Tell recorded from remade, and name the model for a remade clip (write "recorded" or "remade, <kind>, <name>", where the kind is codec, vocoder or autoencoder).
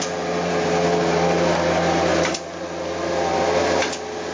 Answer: recorded